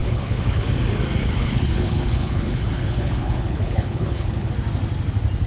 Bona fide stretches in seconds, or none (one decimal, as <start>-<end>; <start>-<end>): 0.7-1.2; 4.5-5.5